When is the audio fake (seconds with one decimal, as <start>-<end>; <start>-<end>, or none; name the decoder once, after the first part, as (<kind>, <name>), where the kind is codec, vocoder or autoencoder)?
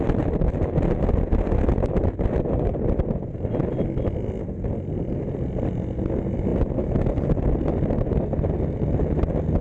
none